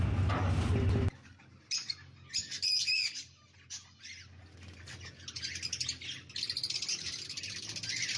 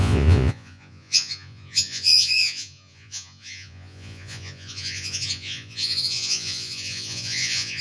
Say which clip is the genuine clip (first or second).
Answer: first